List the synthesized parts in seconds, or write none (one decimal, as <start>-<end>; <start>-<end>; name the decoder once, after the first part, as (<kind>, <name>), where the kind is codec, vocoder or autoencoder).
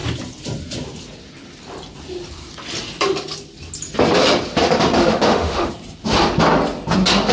5.0-5.7 (autoencoder, DAC-VAE)